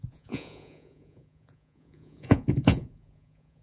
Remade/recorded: remade